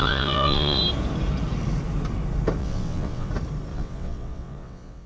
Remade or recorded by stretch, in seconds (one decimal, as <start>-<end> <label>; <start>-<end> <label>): 0.0-0.8 remade; 0.8-2.6 recorded; 2.6-3.3 remade; 3.3-3.7 recorded; 3.7-5.1 remade